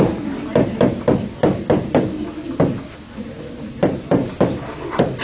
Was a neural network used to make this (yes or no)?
no